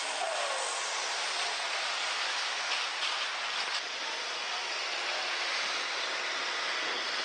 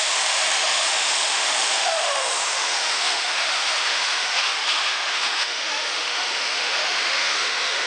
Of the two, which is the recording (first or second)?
first